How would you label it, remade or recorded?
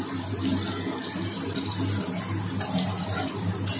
recorded